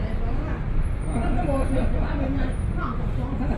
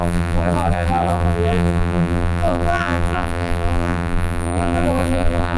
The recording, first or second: first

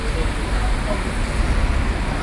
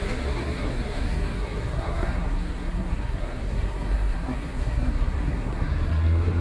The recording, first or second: first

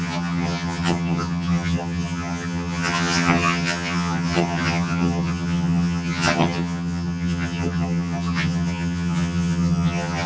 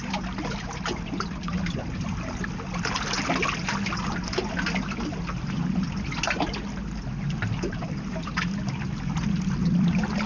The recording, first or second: second